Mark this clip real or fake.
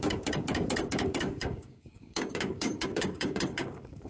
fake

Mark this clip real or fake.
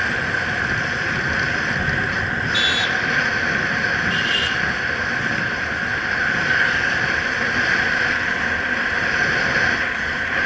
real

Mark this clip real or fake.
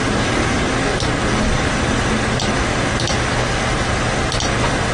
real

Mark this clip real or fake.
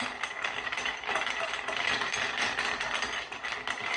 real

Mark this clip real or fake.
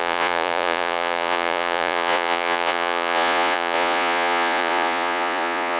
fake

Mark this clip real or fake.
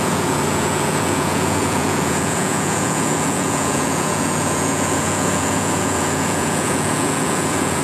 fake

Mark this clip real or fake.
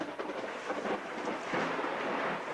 real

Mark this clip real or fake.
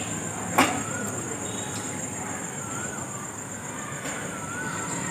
real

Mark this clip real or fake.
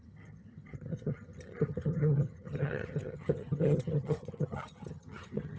fake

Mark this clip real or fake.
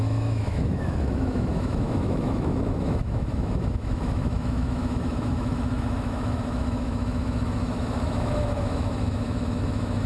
fake